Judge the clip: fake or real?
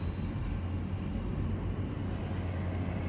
real